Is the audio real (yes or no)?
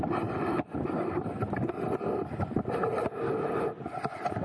yes